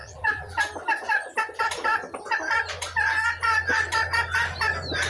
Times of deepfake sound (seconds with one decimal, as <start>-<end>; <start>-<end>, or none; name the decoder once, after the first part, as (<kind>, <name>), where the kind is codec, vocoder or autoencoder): 0.0-0.6 (vocoder, BigVGAN v2)